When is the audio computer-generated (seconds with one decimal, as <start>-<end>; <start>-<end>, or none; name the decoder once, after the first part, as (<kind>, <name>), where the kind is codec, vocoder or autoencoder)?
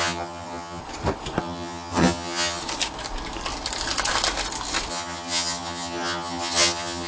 0.0-0.8 (vocoder, HiFi-GAN); 1.4-2.6; 4.9-7.1